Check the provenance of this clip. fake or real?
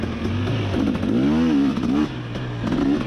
real